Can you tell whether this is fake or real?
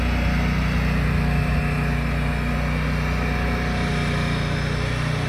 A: real